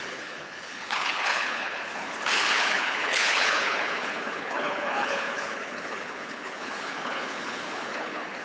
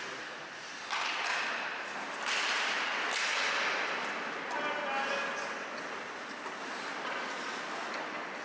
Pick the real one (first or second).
second